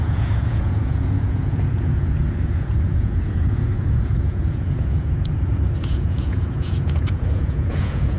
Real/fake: fake